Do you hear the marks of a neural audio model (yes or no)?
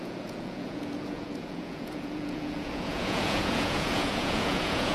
yes